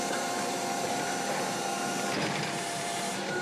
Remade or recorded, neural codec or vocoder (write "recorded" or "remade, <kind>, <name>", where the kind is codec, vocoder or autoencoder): remade, vocoder, BigVGAN v2